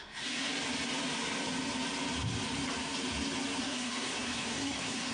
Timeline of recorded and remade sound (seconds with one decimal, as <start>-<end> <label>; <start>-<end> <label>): 0.0-0.5 remade; 0.5-3.6 recorded; 3.6-5.1 remade